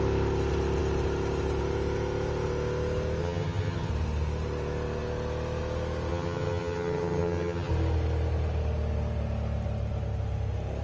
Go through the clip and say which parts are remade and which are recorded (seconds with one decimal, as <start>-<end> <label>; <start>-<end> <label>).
0.0-3.2 recorded; 3.2-3.9 remade; 3.9-6.1 recorded; 6.1-7.7 remade; 7.7-10.8 recorded